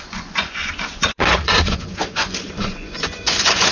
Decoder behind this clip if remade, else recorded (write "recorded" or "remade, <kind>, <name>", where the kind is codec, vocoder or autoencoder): remade, vocoder, Vocos